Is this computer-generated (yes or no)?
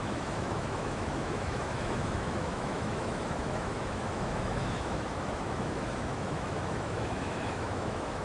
yes